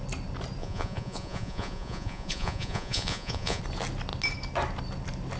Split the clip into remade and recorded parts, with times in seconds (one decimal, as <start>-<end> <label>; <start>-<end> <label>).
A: 0.0-0.6 recorded; 0.6-3.6 remade; 3.6-5.4 recorded